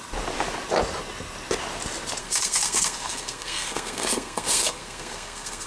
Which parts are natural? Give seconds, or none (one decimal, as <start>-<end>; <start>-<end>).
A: 0.0-2.2